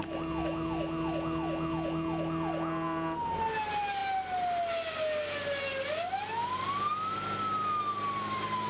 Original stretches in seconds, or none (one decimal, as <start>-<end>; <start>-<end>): 0.0-8.7